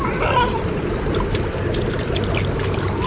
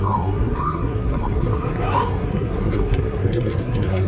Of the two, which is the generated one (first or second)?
second